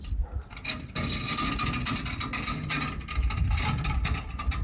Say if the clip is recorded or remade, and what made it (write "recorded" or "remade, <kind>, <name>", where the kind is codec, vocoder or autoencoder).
recorded